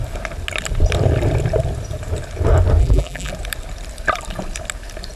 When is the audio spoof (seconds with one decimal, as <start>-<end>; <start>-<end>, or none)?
2.8-3.3